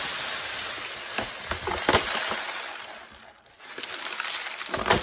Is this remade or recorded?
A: recorded